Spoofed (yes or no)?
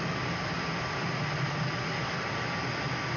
no